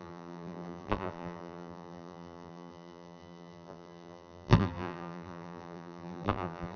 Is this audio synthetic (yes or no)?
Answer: yes